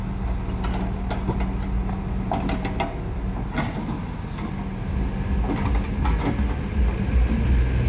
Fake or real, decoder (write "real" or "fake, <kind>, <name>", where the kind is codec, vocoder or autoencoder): real